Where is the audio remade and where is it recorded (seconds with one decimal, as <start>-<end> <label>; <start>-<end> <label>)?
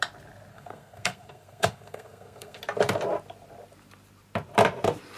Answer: 0.0-0.5 recorded; 0.5-2.6 remade; 2.6-5.2 recorded